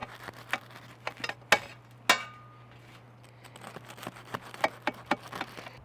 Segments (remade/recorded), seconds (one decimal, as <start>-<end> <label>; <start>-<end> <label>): 0.0-5.8 recorded